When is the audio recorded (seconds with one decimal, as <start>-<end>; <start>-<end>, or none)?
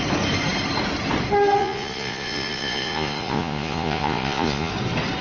0.0-1.6; 4.7-5.2